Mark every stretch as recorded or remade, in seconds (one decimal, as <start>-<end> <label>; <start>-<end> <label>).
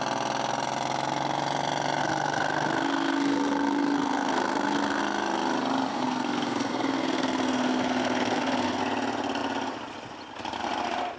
0.0-2.0 recorded; 2.0-5.0 remade; 5.0-5.9 recorded; 5.9-8.8 remade; 8.8-11.2 recorded